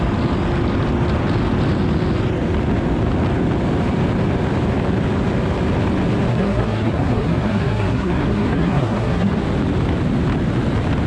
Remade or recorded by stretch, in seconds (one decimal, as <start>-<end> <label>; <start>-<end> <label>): 0.0-6.3 recorded; 6.3-9.3 remade; 9.3-11.1 recorded